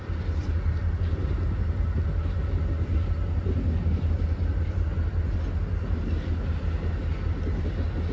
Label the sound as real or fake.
real